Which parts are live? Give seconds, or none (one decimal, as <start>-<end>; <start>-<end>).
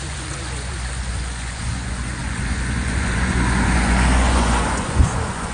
none